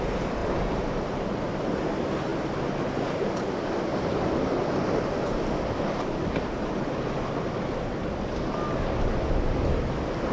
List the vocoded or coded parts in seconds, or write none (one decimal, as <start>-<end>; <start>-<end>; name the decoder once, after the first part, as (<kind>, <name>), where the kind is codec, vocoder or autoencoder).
none